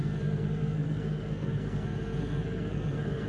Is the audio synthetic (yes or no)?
yes